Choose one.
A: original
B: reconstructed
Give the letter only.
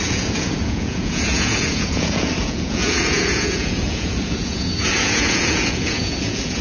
B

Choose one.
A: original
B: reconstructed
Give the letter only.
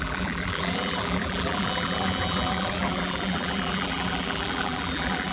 B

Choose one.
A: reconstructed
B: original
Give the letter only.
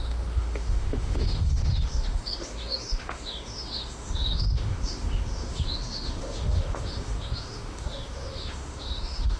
A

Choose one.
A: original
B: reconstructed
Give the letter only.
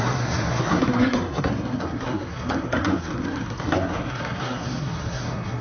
B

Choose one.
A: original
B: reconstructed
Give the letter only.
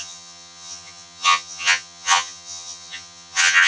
B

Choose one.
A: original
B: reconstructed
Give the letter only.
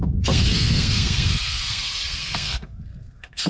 B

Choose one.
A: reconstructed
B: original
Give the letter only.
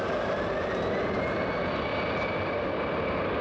B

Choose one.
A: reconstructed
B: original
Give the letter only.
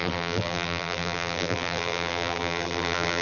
A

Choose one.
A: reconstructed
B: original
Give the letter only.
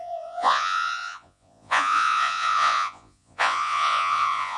A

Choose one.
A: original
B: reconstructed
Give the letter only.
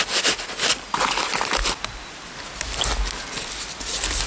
A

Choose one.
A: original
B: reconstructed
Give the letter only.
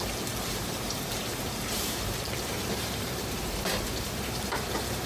B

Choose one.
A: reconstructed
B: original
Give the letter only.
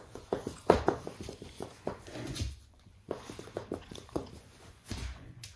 A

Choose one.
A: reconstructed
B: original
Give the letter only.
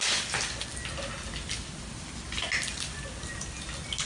B